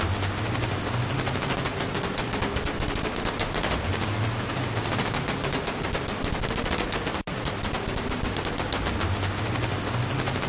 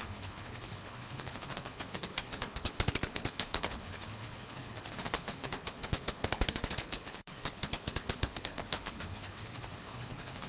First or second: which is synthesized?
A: second